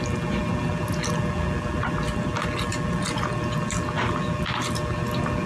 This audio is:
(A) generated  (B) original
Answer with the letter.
B